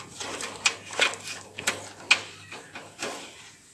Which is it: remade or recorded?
recorded